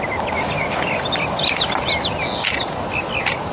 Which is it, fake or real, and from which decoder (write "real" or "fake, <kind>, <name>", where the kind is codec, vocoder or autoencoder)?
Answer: real